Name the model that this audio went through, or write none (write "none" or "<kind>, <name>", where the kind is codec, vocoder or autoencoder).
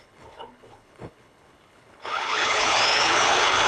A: codec, HILCodec